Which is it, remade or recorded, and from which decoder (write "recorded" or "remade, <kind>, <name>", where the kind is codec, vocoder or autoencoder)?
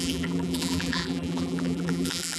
remade, vocoder, BigVGAN v2